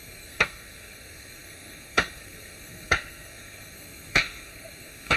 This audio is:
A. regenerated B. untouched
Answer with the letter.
A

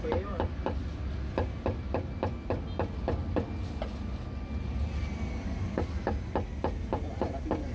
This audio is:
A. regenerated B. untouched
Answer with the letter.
B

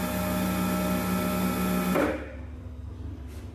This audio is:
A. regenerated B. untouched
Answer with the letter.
B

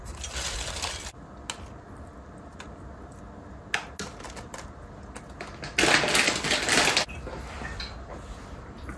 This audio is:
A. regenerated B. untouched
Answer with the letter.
B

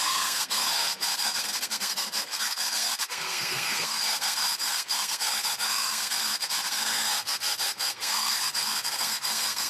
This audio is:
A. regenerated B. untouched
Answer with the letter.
A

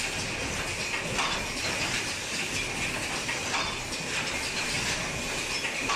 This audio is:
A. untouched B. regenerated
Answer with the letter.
A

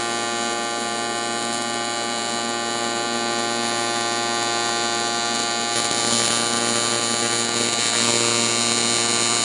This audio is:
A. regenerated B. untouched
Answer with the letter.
B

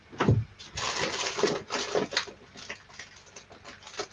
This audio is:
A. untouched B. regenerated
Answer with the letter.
A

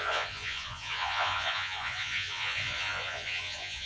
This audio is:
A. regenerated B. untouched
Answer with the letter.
A